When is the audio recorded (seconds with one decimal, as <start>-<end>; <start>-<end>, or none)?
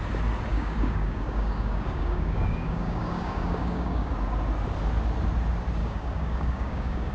0.0-0.5; 4.1-5.8